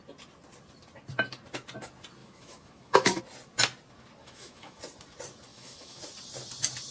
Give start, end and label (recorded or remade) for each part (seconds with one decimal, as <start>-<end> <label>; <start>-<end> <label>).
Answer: 0.0-2.2 recorded; 2.2-3.2 remade; 3.2-4.2 recorded; 4.2-4.8 remade; 4.8-5.5 recorded; 5.5-6.0 remade; 6.0-6.9 recorded